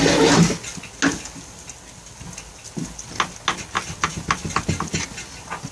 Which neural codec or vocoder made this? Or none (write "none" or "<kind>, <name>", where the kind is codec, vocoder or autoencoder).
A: none